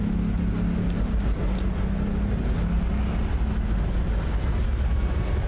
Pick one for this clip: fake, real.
real